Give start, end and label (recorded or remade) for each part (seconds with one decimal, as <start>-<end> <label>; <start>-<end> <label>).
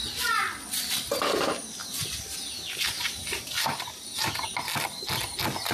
0.0-1.8 recorded; 1.8-4.5 remade; 4.5-5.7 recorded